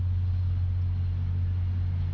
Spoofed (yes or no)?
no